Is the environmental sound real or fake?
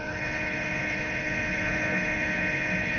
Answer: fake